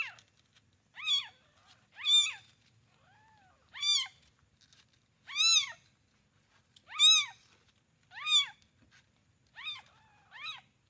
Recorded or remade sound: recorded